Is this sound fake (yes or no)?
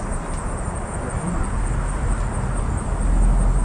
no